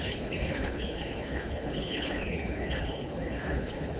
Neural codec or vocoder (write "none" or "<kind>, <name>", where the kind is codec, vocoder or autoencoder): codec, HILCodec